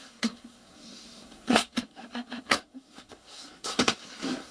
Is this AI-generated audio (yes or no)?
yes